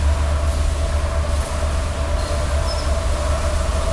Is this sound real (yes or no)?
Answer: yes